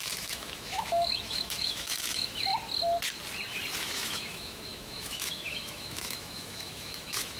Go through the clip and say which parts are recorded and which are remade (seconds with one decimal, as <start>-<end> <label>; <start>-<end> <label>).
0.0-2.5 remade; 2.5-3.8 recorded; 3.8-7.4 remade